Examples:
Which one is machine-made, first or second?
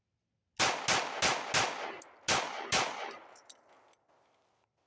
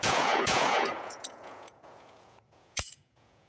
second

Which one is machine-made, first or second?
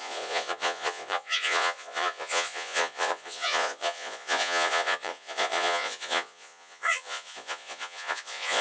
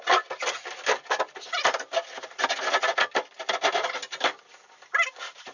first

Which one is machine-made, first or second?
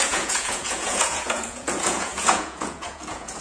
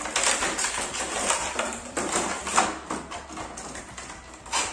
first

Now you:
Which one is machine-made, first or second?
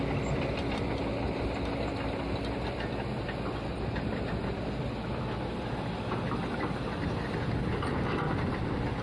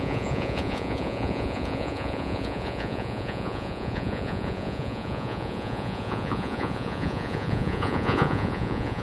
second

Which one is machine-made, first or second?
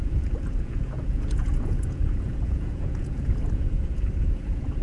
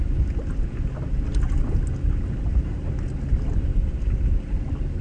first